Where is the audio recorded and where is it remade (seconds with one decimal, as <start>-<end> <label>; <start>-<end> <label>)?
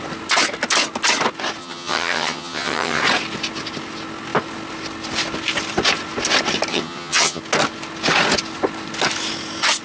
0.0-1.6 recorded; 1.6-3.0 remade; 3.0-6.7 recorded; 6.7-7.4 remade; 7.4-9.8 recorded